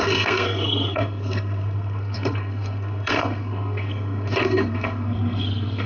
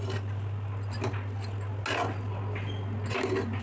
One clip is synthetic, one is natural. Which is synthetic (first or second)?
first